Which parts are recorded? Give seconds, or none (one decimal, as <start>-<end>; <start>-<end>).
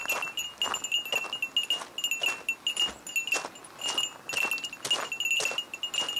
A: 0.0-6.2